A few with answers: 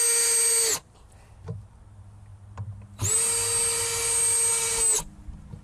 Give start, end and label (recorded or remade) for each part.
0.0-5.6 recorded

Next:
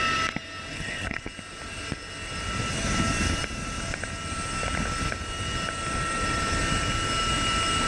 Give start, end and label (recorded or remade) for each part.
0.0-0.7 recorded; 0.7-1.3 remade; 1.3-7.9 recorded